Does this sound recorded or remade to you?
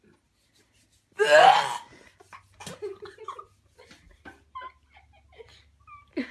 recorded